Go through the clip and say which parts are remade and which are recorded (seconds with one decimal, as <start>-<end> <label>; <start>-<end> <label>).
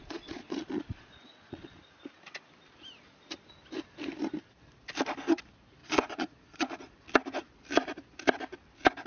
0.0-1.8 remade; 1.8-5.8 recorded; 5.8-6.9 remade; 6.9-9.1 recorded